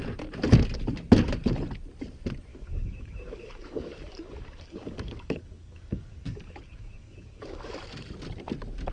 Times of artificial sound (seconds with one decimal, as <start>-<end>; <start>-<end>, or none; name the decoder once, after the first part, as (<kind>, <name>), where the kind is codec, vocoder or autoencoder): 2.5-7.7 (codec, DAC)